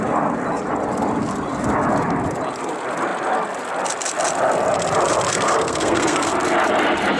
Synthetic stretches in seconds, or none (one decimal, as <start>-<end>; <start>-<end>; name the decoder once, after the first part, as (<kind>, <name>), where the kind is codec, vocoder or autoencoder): 5.3-6.3 (codec, SNAC)

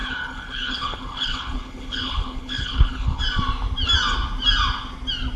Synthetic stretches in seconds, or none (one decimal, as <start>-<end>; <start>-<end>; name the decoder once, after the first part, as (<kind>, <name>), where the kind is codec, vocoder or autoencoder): 0.0-3.2 (codec, HILCodec)

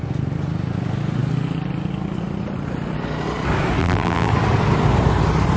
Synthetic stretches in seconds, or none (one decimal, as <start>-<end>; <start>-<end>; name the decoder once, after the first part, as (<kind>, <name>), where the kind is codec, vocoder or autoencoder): 3.8-4.3 (vocoder, BigVGAN v2)